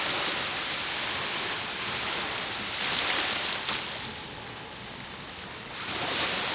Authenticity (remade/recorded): recorded